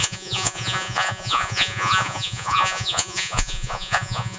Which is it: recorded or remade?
remade